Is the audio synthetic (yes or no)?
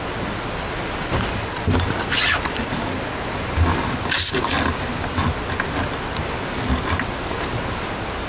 no